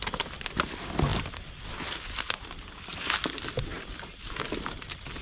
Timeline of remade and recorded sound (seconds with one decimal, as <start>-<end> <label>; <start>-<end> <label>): 0.0-5.2 recorded